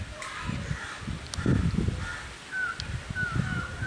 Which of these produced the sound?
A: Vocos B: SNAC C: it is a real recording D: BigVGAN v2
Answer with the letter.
C